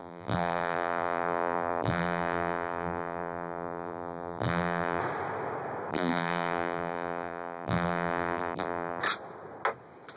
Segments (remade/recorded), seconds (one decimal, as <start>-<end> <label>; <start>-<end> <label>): 0.0-5.0 remade; 5.0-5.9 recorded; 5.9-9.0 remade; 9.0-10.2 recorded